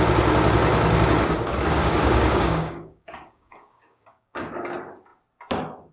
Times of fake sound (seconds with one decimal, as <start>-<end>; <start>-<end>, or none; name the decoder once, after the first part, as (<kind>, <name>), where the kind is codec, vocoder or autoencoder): 1.8-4.5 (codec, DAC)